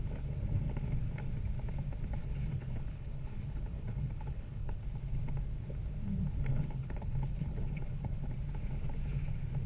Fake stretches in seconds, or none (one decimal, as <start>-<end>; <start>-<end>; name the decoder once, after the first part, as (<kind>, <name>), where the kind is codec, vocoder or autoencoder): 2.2-4.8 (codec, HILCodec); 6.5-8.3